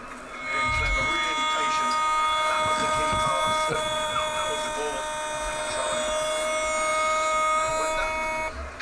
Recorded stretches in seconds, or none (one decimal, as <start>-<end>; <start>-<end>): 0.0-8.8